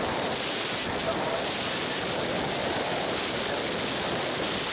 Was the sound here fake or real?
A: real